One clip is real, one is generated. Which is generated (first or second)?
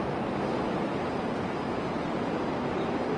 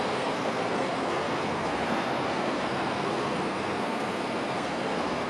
second